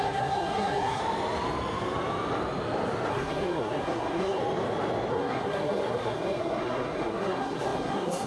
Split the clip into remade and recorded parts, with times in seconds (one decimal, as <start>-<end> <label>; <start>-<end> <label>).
0.0-1.0 remade; 1.0-3.1 recorded; 3.1-4.4 remade; 4.4-5.1 recorded; 5.1-8.3 remade